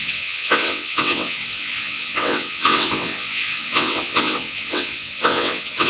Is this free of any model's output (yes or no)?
no